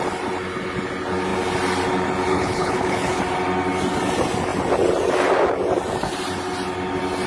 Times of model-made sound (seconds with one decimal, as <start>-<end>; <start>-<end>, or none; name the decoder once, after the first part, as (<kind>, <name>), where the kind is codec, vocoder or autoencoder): 2.3-3.2 (codec, HILCodec)